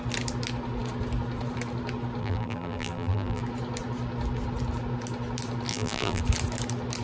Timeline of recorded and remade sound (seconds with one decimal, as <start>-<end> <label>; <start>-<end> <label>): 0.0-2.2 recorded; 2.2-3.4 remade; 3.4-5.7 recorded; 5.7-6.2 remade; 6.2-7.0 recorded